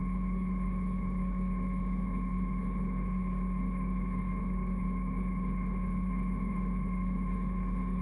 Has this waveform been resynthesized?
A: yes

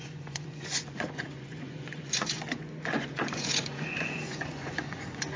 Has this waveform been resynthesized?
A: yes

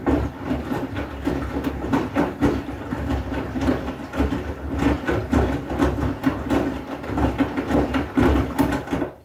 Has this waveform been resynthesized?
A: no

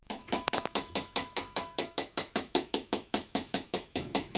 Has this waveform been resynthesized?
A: yes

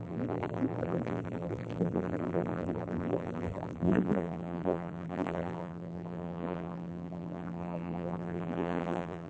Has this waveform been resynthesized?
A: yes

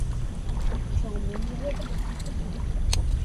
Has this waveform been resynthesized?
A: no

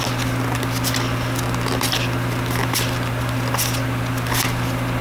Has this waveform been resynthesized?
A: no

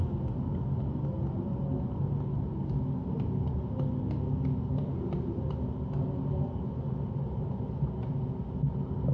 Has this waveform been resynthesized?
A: no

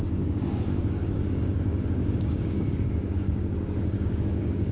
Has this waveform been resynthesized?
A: yes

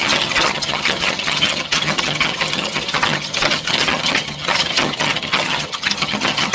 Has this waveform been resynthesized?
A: yes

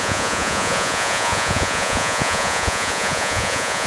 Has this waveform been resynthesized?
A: yes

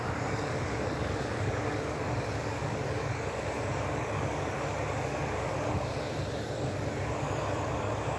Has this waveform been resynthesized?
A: yes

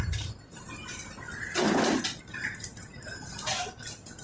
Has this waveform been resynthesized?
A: no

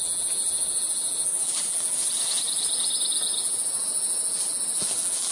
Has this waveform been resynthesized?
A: yes